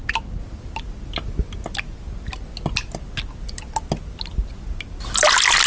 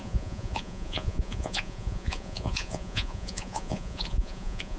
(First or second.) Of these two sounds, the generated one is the second